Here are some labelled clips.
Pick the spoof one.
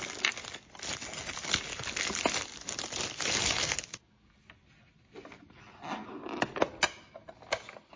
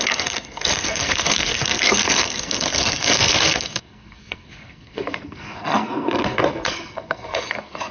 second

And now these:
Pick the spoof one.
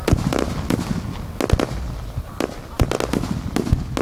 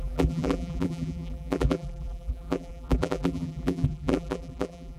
second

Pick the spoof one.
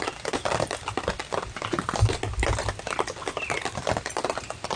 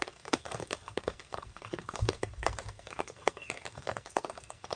second